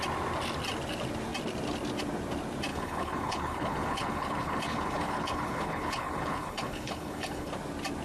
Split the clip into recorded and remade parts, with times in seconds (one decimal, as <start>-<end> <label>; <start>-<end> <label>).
0.0-2.7 recorded; 2.7-7.5 remade; 7.5-8.0 recorded